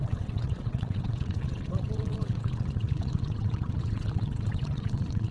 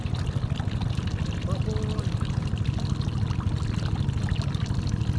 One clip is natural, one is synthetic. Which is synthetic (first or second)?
first